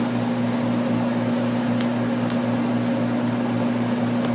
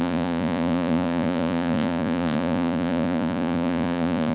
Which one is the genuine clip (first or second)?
first